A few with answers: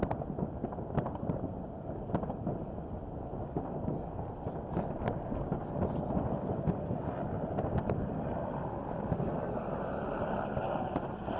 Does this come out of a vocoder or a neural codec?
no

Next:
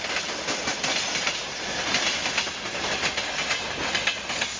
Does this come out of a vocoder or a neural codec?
no